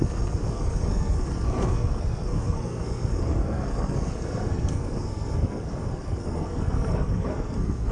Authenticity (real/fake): fake